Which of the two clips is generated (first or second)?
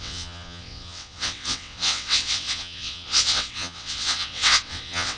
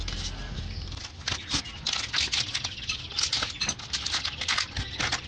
first